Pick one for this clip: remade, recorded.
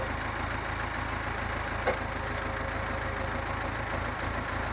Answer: recorded